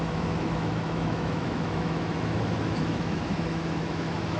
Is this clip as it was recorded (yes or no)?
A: no